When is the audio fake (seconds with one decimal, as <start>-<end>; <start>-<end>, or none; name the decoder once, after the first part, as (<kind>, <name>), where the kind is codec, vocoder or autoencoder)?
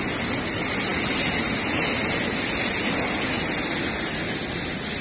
none